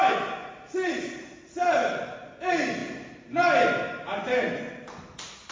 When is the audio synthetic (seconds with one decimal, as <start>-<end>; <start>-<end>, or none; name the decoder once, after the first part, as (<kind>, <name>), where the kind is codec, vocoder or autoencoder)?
0.4-2.4 (vocoder, Vocos)